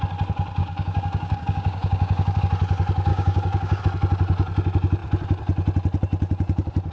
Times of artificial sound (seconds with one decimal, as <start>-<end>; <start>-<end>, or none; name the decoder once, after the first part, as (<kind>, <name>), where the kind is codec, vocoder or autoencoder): 0.6-2.4 (codec, DAC); 3.1-3.8